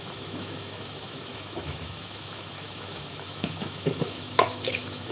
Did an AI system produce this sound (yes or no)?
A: yes